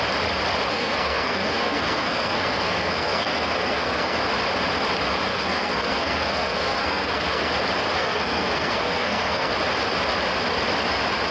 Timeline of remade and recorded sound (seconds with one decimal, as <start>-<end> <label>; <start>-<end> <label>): 0.0-0.7 recorded; 0.7-4.2 remade; 4.2-5.3 recorded; 5.3-7.5 remade; 7.5-8.0 recorded; 8.0-9.5 remade; 9.5-11.3 recorded